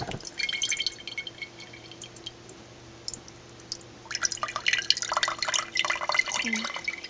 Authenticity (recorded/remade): recorded